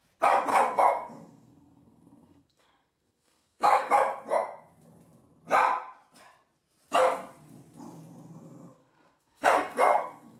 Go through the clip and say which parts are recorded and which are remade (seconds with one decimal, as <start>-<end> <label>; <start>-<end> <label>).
0.0-0.5 recorded; 0.5-3.9 remade; 3.9-8.8 recorded; 8.8-10.4 remade